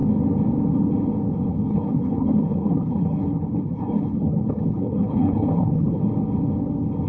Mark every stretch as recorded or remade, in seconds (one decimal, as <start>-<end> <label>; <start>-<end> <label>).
0.0-1.5 recorded; 1.5-6.0 remade; 6.0-7.1 recorded